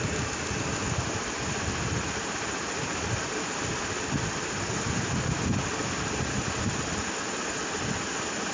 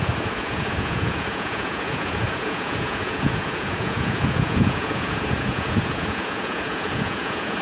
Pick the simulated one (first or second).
second